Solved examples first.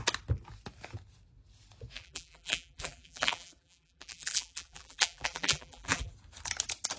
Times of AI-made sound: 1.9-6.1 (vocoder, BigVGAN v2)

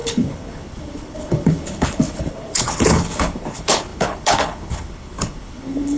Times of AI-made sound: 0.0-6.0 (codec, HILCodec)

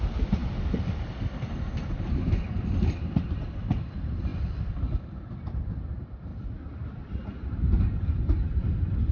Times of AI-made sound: 0.0-9.1 (vocoder, BigVGAN v2)

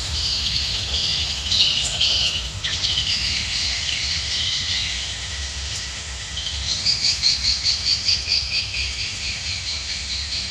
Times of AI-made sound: 0.0-10.5 (autoencoder, DAC-VAE)

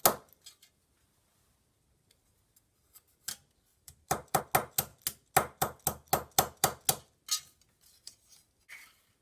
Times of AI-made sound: 3.7-4.4 (vocoder, BigVGAN v2)